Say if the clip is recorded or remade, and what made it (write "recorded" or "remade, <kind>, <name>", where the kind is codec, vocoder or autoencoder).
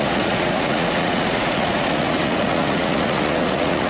remade, vocoder, Vocos